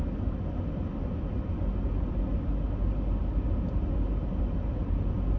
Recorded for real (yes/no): yes